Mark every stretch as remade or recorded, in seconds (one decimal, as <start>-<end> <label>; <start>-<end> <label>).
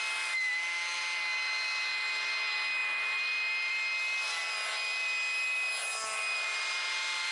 0.0-7.3 recorded